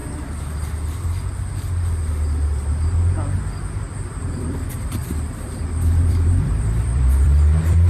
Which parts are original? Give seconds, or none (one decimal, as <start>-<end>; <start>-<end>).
0.0-4.4